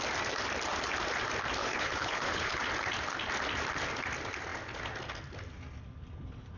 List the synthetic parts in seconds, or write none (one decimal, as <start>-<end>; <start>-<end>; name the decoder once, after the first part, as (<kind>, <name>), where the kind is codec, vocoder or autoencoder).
1.6-2.6 (codec, HILCodec)